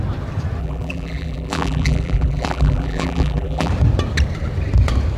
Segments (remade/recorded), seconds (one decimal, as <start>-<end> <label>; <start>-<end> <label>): 0.0-0.6 recorded; 0.6-3.7 remade; 3.7-5.2 recorded